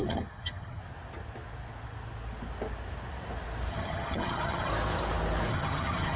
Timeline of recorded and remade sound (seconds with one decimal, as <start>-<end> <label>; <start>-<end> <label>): 0.0-0.8 remade; 0.8-3.7 recorded; 3.7-4.7 remade; 4.7-5.5 recorded; 5.5-6.2 remade